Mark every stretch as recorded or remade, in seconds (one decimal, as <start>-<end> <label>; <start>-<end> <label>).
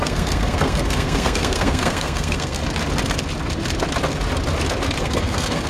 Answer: 0.0-2.6 remade; 2.6-5.0 recorded; 5.0-5.7 remade